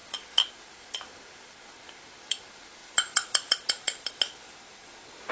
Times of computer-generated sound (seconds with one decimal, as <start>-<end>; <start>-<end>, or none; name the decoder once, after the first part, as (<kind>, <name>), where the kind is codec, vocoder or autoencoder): none